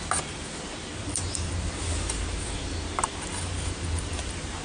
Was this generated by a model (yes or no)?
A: no